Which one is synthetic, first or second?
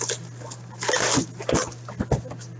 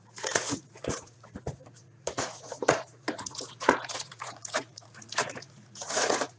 second